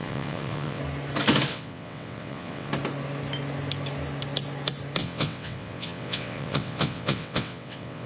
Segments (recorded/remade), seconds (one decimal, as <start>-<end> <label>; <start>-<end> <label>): 0.0-0.8 remade; 0.8-1.5 recorded; 1.5-2.7 remade; 2.7-5.0 recorded; 5.0-8.1 remade

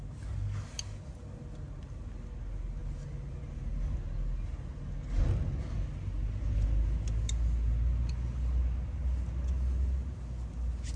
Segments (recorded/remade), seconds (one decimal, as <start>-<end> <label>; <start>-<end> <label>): 0.0-11.0 recorded

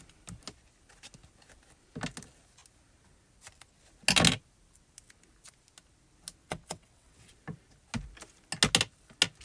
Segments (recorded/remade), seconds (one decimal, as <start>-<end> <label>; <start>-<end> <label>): 0.0-6.4 recorded; 6.4-7.3 remade; 7.3-9.4 recorded

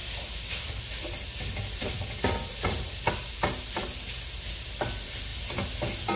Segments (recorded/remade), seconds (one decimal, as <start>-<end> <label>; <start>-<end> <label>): 0.0-6.2 recorded

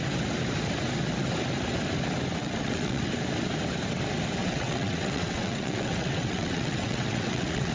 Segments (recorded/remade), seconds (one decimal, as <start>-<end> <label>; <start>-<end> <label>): 0.0-2.4 recorded; 2.4-3.0 remade; 3.0-4.4 recorded; 4.4-7.7 remade

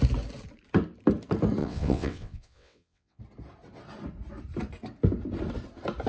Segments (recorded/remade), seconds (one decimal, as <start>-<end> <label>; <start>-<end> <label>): 0.0-1.6 recorded; 1.6-3.2 remade; 3.2-6.1 recorded